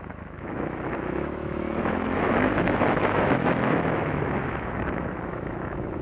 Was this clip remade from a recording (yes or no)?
yes